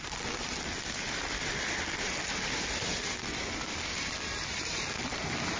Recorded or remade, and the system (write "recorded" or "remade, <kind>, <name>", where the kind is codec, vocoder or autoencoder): recorded